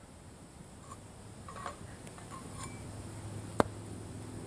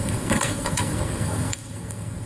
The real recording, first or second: first